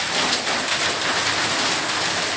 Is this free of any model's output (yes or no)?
yes